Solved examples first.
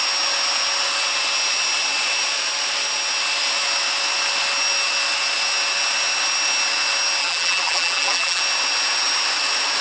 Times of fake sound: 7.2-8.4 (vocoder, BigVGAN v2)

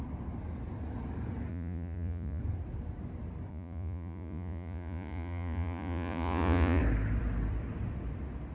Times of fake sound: 1.5-2.4 (vocoder, Vocos); 3.5-6.8

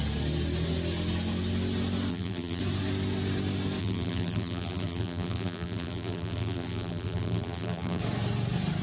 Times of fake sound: 2.1-2.6 (vocoder, BigVGAN v2); 3.8-8.0

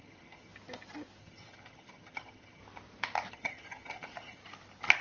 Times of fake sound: 0.0-0.5 (vocoder, HiFi-GAN); 1.2-2.6; 3.3-4.4